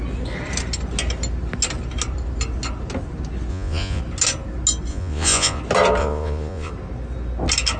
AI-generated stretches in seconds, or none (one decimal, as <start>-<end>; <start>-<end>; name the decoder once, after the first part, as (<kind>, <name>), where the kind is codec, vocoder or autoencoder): 3.5-4.0 (vocoder, Vocos); 4.9-5.6; 6.0-6.7